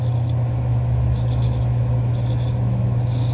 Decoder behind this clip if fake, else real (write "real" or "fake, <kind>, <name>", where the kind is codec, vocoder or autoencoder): fake, autoencoder, DAC-VAE